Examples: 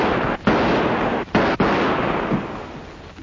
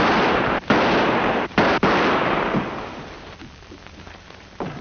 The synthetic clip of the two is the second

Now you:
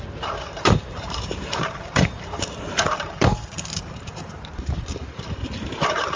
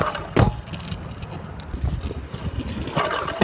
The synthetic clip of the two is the first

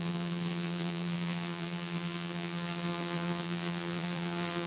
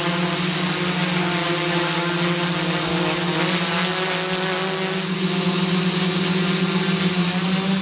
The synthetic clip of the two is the first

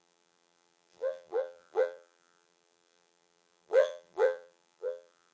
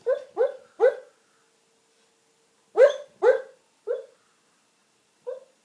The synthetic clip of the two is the first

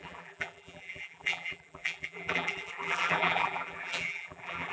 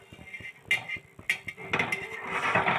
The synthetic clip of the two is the first